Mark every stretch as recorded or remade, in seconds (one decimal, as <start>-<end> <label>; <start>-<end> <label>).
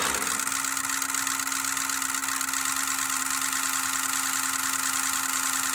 0.0-5.7 recorded